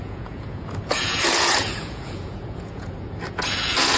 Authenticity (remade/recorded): remade